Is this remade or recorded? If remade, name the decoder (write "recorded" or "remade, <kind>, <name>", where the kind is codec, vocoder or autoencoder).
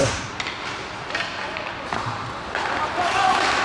recorded